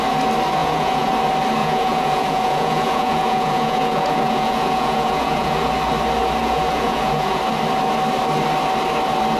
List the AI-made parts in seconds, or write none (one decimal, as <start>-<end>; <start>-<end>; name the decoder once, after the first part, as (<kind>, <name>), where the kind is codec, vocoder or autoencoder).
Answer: 0.6-1.1 (vocoder, Vocos); 1.6-5.7; 6.4-7.4